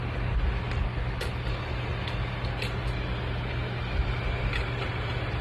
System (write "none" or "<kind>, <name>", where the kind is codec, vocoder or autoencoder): none